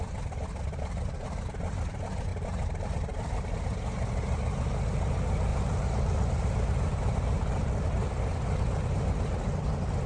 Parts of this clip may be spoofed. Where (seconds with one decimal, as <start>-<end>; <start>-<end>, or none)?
2.3-2.9; 5.5-7.6